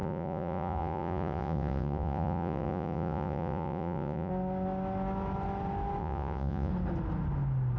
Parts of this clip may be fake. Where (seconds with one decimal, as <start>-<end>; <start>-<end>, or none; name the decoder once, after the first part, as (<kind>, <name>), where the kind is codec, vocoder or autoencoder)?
0.0-4.3 (vocoder, Vocos); 6.0-6.7